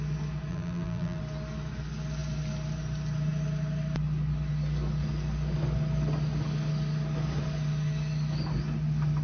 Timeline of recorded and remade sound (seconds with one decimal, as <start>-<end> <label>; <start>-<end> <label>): 0.0-0.5 recorded; 0.5-1.2 remade; 1.2-9.2 recorded